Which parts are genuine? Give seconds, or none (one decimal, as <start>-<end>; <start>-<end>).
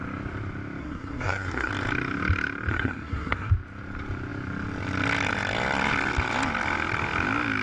0.0-0.8; 1.7-2.7; 3.5-7.6